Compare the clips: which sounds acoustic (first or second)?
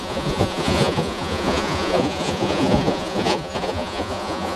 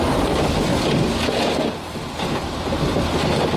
second